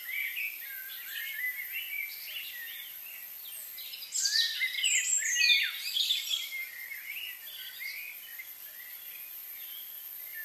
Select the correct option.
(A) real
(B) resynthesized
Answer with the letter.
A